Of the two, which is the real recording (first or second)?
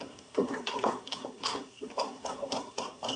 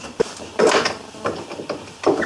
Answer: second